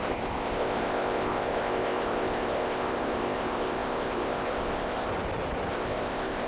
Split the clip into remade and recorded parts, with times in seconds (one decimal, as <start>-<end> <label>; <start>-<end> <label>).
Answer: 0.0-5.1 remade; 5.1-5.7 recorded; 5.7-6.5 remade